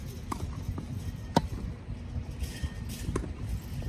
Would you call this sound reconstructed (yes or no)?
no